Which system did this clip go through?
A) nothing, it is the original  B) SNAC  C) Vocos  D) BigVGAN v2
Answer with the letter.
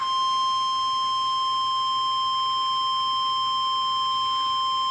A